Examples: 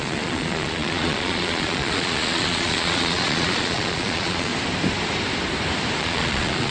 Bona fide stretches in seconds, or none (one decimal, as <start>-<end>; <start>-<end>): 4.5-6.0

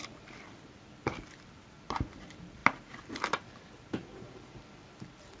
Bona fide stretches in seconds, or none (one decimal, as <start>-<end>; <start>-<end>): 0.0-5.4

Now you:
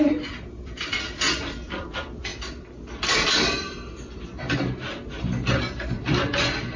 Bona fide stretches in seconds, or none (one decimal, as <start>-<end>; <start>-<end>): 2.3-3.0; 4.3-5.5

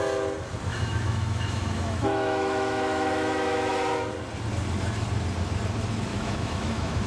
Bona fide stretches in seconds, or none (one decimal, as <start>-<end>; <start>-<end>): 0.0-0.7; 3.7-6.1

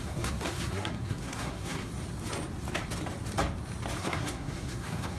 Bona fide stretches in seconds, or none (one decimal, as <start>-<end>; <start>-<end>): 1.9-4.0